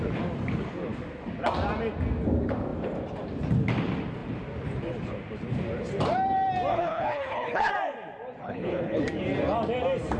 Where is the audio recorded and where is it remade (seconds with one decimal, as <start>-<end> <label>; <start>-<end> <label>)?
0.0-6.7 recorded; 6.7-7.7 remade; 7.7-8.4 recorded; 8.4-9.0 remade; 9.0-10.2 recorded

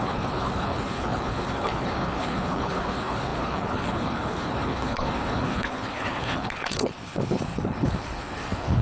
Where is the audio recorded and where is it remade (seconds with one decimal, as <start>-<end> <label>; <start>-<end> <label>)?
0.0-8.8 remade

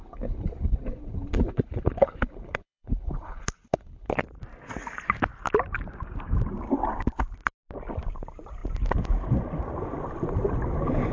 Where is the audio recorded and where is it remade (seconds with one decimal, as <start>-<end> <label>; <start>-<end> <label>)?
0.0-4.1 remade; 4.1-11.1 recorded

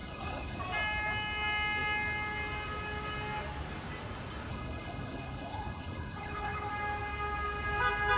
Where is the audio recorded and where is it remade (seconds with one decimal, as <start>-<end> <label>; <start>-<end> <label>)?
0.0-0.6 remade; 0.6-4.5 recorded; 4.5-6.7 remade; 6.7-8.2 recorded

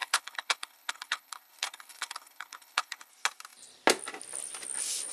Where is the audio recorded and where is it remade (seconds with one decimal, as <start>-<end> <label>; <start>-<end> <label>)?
0.0-3.1 remade; 3.1-5.1 recorded

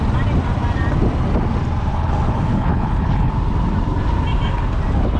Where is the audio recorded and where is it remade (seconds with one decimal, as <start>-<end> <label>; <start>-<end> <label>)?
0.0-1.9 recorded; 1.9-3.3 remade; 3.3-5.2 recorded

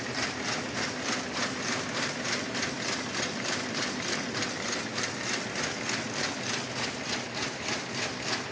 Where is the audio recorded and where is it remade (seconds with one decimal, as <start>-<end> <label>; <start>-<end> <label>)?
0.0-8.5 recorded